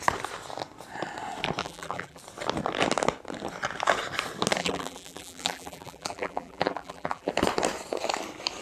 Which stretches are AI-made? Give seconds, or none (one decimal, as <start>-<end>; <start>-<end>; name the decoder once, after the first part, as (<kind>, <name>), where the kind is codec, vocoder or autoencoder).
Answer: 1.6-2.2 (vocoder, BigVGAN v2); 4.6-7.3